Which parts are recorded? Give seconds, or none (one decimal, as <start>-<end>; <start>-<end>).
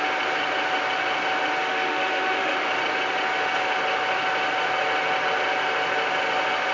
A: 0.0-1.6; 2.7-6.7